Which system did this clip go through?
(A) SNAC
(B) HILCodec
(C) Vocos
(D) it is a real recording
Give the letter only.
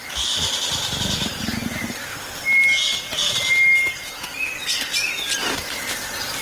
D